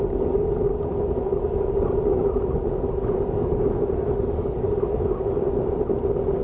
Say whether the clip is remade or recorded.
recorded